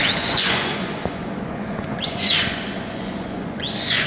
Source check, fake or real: fake